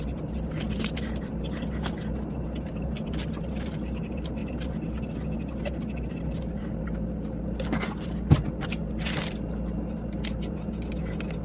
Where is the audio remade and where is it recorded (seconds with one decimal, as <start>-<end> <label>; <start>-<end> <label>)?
0.0-11.4 recorded